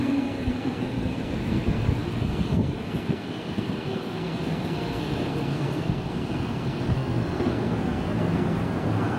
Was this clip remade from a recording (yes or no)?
yes